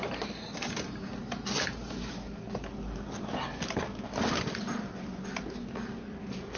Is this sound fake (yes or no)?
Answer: no